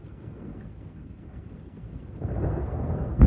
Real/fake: fake